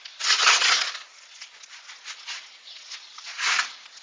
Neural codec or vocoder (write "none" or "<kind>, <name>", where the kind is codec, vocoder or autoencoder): vocoder, Vocos